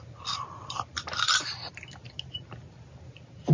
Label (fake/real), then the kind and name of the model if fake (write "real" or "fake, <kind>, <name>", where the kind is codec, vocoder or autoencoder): real